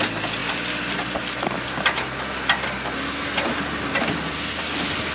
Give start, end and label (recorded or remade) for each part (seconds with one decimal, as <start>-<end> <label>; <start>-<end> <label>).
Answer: 0.0-5.1 recorded

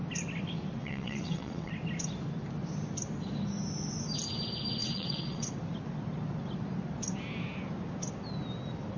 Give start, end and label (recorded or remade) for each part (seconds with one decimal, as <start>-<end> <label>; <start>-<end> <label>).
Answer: 0.0-0.8 recorded; 0.8-1.7 remade; 1.7-4.8 recorded; 4.8-5.5 remade; 5.5-9.0 recorded

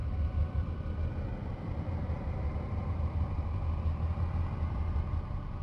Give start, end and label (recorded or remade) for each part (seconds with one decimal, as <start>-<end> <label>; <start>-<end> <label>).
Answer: 0.0-3.4 remade; 3.4-5.6 recorded

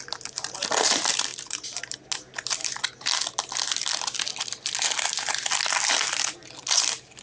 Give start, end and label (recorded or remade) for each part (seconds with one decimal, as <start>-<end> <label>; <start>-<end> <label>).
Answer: 0.0-1.3 recorded; 1.3-1.8 remade; 1.8-7.2 recorded

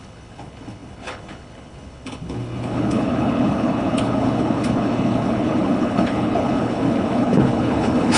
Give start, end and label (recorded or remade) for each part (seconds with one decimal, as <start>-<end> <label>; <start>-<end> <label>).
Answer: 0.0-8.2 remade

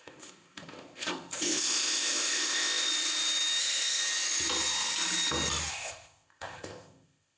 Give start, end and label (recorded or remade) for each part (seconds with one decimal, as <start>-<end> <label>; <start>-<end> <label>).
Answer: 0.0-2.9 remade; 2.9-3.6 recorded; 3.6-4.0 remade; 4.0-5.7 recorded; 5.7-7.4 remade

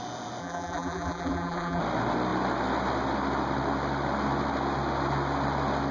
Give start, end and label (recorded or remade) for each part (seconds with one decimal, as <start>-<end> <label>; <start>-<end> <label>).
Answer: 0.0-0.4 recorded; 0.4-1.8 remade; 1.8-5.9 recorded